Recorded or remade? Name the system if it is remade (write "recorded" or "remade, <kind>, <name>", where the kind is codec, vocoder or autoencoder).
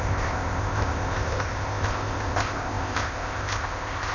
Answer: remade, codec, ZipCodec